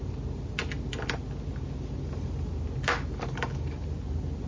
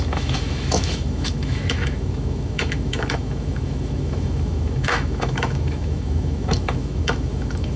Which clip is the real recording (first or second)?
first